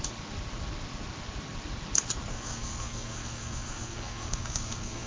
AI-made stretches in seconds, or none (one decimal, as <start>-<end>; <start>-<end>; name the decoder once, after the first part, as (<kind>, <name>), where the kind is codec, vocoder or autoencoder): 2.3-5.1 (codec, SNAC)

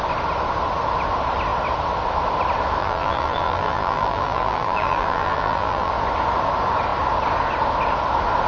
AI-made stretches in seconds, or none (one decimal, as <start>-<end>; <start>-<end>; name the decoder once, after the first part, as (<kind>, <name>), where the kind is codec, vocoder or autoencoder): 2.8-5.9 (vocoder, BigVGAN v2)

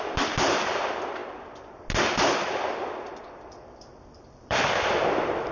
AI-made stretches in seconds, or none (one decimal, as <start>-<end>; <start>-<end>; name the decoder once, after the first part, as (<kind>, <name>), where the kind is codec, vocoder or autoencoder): 0.0-1.2 (vocoder, BigVGAN v2); 3.2-5.5

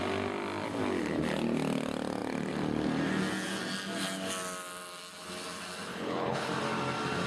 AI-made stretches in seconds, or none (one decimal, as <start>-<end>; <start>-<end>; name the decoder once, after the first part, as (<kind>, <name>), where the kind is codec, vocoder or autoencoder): 5.9-6.5 (codec, HILCodec)

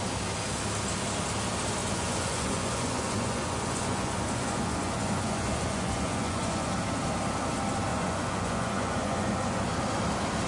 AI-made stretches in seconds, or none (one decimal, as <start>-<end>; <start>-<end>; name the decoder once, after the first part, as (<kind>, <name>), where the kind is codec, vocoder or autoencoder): 1.8-6.7 (vocoder, Vocos); 7.9-9.6

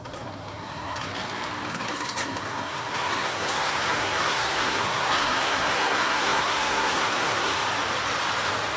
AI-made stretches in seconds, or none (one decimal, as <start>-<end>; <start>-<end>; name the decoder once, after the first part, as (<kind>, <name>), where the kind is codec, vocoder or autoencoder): 0.0-1.1 (codec, SNAC); 1.7-7.6

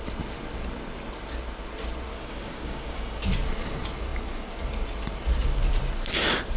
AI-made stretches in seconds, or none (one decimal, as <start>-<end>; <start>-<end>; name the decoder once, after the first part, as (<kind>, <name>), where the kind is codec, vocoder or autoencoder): 2.1-3.2 (codec, DAC)